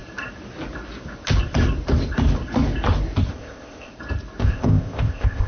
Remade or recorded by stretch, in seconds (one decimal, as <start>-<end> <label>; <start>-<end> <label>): 0.0-3.3 recorded; 3.3-3.9 remade; 3.9-4.4 recorded; 4.4-5.5 remade